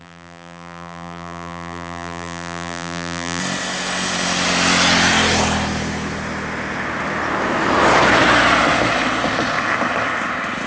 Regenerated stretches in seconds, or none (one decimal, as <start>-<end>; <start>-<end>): 0.0-3.4